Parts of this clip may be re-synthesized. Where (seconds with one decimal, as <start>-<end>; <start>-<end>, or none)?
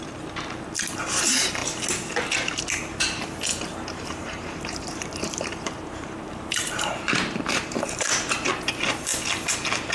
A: 3.5-8.5